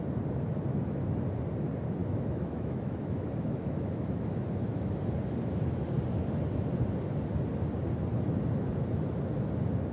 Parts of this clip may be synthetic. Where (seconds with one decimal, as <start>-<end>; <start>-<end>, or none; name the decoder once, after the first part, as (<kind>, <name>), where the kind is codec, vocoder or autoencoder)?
2.0-4.9 (autoencoder, DAC-VAE)